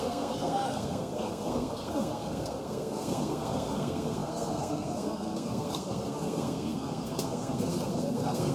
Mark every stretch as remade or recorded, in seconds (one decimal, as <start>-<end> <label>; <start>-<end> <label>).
0.0-8.5 remade